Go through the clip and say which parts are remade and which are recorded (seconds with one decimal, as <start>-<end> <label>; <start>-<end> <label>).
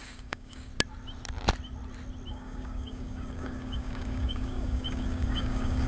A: 0.0-0.7 remade; 0.7-2.3 recorded; 2.3-5.9 remade